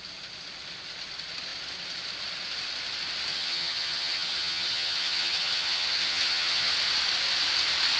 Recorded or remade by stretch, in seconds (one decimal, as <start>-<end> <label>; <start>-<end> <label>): 0.0-3.3 recorded; 3.3-6.7 remade; 6.7-8.0 recorded